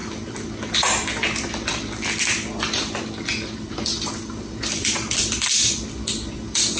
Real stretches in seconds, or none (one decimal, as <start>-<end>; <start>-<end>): 0.0-6.8